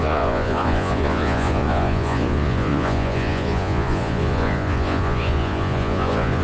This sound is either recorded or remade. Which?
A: remade